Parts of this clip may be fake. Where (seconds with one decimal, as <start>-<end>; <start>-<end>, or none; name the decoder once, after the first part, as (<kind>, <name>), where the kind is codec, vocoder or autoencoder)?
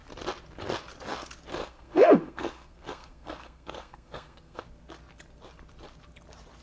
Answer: 1.6-4.6 (codec, SNAC)